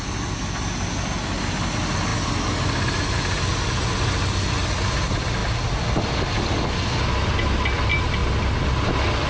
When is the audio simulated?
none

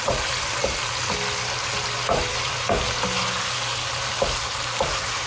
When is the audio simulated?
0.0-0.8; 4.0-5.3

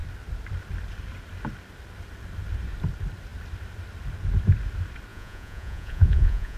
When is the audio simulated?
5.1-6.6

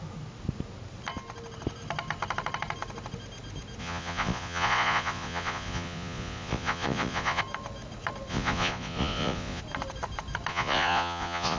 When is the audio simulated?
3.8-7.4; 8.3-9.6; 10.5-11.6

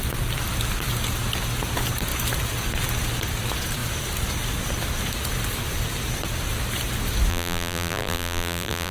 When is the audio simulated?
7.3-8.9

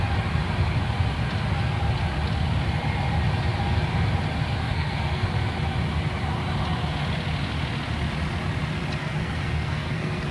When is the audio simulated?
4.6-5.3; 9.0-10.3

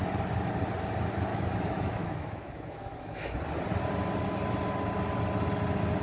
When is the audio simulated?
1.3-3.4